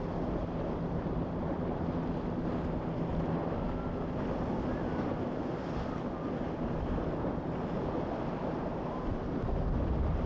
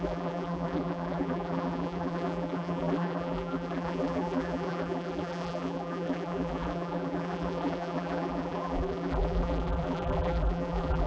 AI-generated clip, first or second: second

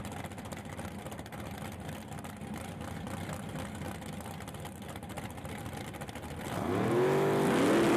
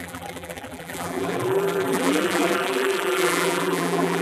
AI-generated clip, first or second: second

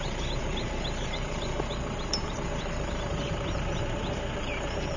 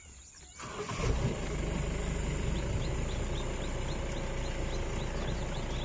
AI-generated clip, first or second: first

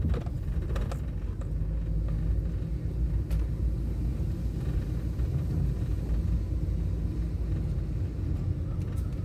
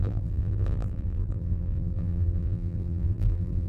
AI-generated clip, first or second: second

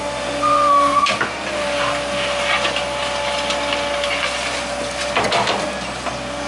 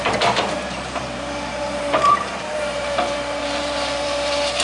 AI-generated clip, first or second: second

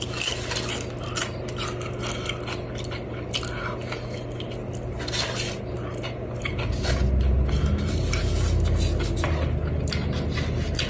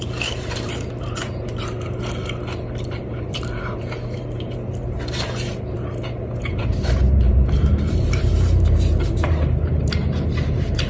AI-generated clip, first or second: second